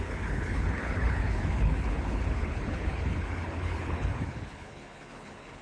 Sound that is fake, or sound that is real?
fake